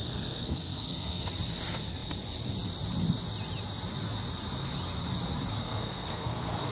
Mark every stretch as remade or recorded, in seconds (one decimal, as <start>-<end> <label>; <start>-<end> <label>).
0.0-1.3 remade; 1.3-5.6 recorded; 5.6-6.7 remade